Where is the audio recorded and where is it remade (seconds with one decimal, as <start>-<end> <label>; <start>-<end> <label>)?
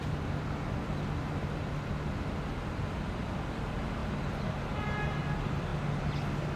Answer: 0.0-6.6 recorded